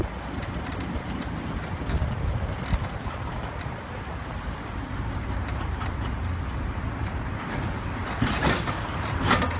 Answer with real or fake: real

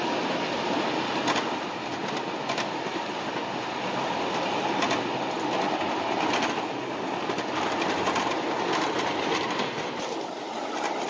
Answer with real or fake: real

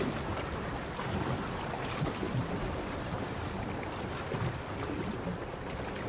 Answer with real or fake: real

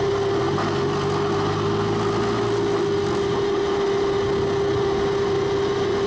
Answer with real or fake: real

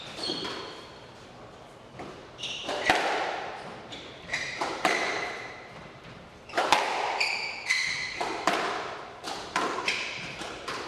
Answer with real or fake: fake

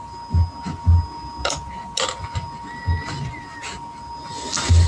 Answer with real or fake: real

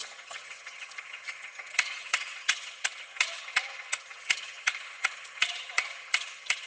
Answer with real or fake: fake